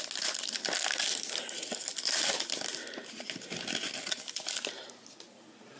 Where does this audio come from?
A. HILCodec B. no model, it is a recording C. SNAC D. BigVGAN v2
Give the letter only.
B